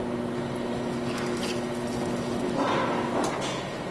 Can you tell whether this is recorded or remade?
recorded